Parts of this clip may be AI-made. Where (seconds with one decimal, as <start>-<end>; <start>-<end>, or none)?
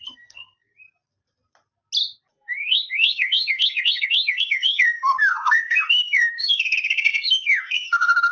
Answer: 0.0-0.7; 2.3-8.3